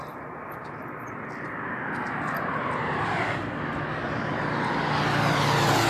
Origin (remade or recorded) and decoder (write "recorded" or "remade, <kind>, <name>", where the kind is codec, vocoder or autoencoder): recorded